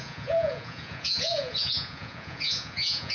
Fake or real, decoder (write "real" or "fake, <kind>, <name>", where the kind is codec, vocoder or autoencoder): fake, vocoder, Vocos